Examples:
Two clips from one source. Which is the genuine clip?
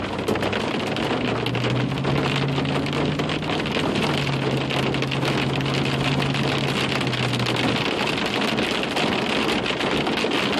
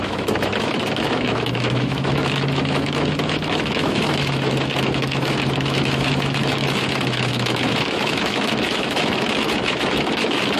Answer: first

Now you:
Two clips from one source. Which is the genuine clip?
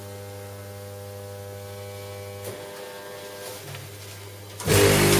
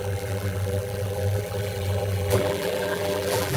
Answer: first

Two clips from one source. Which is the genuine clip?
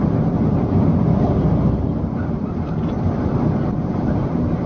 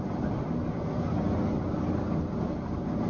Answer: second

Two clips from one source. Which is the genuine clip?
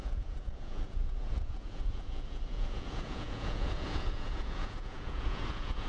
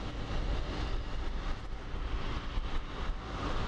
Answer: second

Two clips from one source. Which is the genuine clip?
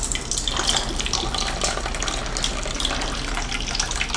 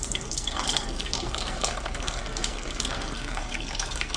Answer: first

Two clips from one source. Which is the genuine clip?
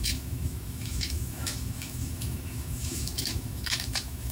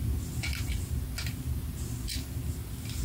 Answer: second